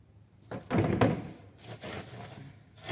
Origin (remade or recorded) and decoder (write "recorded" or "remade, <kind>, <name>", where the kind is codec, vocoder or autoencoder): recorded